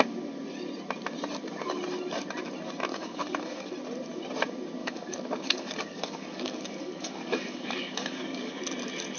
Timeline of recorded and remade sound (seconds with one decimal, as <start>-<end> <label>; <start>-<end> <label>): 0.0-2.9 recorded; 2.9-3.7 remade; 3.7-4.8 recorded; 4.8-8.6 remade; 8.6-9.2 recorded